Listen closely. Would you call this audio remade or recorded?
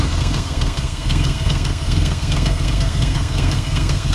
remade